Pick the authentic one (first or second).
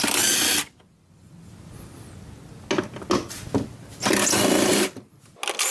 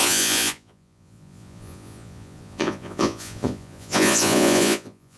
first